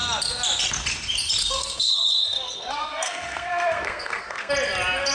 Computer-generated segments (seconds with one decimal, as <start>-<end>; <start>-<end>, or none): 1.4-4.5